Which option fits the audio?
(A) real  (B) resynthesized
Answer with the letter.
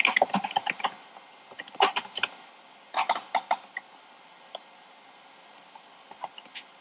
A